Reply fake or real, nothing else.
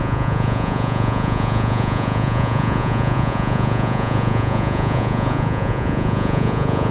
fake